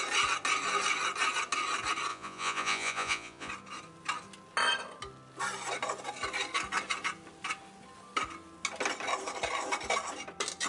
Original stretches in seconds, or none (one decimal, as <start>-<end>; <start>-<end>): 0.0-2.1; 3.5-10.7